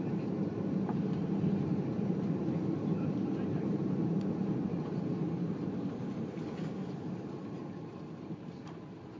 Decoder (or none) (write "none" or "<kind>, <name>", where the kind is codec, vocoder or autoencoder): vocoder, BigVGAN v2